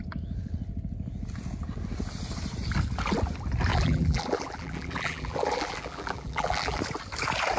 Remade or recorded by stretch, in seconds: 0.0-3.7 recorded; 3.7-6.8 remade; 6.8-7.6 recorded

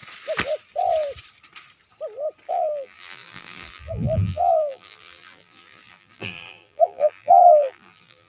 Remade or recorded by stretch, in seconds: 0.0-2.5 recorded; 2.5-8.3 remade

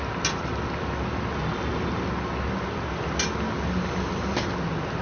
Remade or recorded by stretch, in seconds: 0.0-5.0 recorded

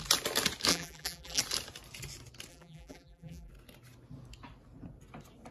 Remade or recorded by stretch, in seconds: 0.0-0.7 recorded; 0.7-1.4 remade; 1.4-2.5 recorded; 2.5-3.5 remade; 3.5-5.5 recorded

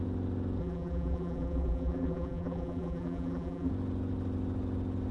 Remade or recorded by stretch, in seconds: 0.0-0.6 recorded; 0.6-3.7 remade; 3.7-5.1 recorded

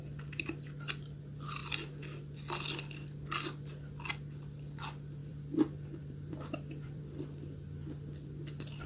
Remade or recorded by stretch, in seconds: 0.0-5.2 recorded; 5.2-7.0 remade; 7.0-8.9 recorded